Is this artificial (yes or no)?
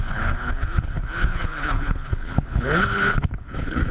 yes